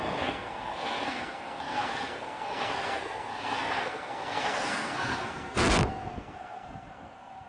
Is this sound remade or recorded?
remade